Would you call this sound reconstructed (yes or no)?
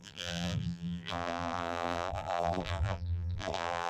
yes